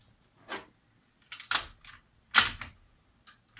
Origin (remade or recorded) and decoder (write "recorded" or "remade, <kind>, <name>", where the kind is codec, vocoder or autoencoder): recorded